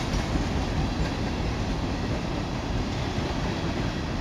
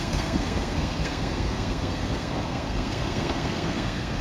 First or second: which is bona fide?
first